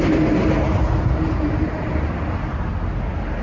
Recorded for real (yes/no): yes